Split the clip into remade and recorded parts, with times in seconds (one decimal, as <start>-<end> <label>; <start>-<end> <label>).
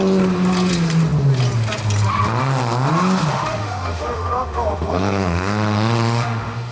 0.0-3.3 recorded; 3.3-6.7 remade